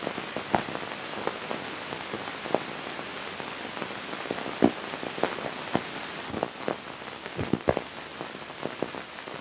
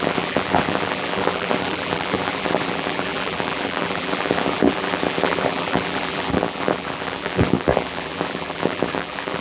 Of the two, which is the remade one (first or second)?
second